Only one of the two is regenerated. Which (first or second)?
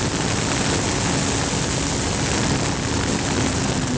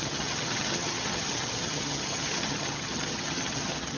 second